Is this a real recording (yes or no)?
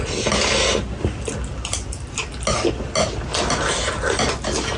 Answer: yes